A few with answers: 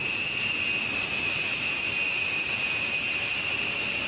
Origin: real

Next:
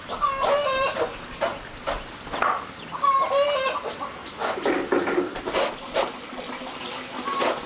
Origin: real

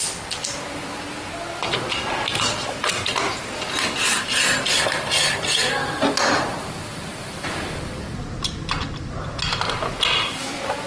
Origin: real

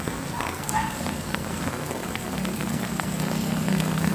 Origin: fake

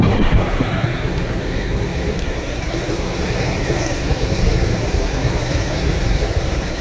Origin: fake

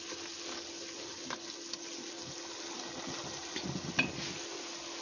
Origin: real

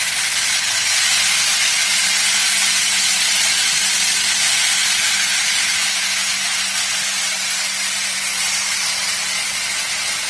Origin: real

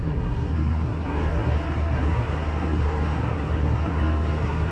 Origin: fake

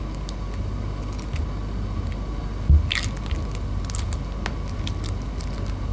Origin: real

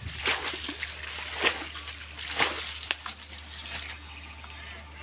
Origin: real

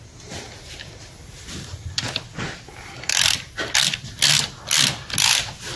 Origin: real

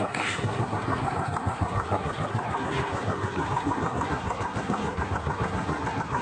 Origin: fake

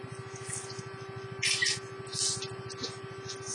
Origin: real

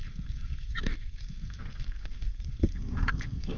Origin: fake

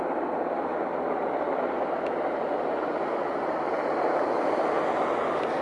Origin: real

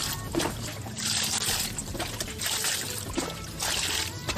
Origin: real